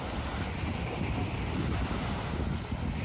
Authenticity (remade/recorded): recorded